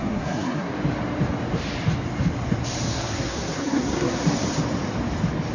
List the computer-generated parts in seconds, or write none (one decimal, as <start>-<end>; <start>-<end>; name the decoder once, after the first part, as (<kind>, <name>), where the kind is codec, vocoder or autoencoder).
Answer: 0.0-0.7 (codec, SNAC); 2.9-4.2

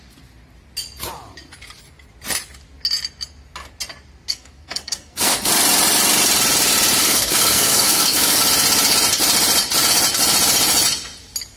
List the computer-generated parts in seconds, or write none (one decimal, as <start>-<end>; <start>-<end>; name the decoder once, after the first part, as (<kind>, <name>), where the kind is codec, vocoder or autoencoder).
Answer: 4.3-5.5 (codec, SNAC); 7.0-8.4

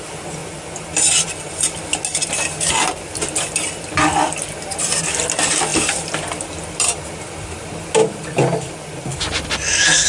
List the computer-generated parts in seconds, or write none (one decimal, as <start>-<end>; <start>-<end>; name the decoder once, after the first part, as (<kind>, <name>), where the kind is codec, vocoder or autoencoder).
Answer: 5.7-7.0 (vocoder, BigVGAN v2); 8.0-9.2